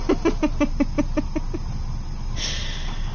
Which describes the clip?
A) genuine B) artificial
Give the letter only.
A